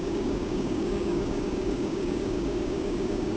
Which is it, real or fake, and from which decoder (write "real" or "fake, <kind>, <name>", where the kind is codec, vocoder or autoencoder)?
fake, codec, DAC